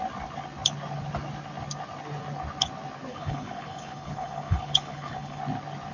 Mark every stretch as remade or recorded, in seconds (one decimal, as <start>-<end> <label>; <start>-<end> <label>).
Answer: 0.0-3.1 recorded; 3.1-5.4 remade; 5.4-5.9 recorded